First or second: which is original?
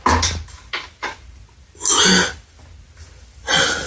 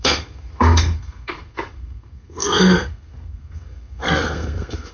first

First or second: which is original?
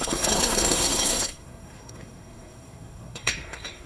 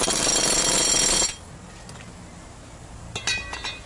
second